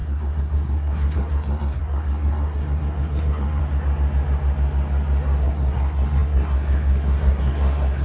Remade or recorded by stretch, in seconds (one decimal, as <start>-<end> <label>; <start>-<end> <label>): 0.0-3.6 remade; 3.6-5.4 recorded; 5.4-8.0 remade